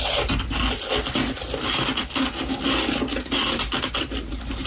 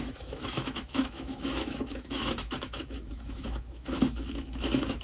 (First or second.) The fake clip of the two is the second